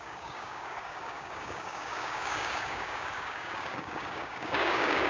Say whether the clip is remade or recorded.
remade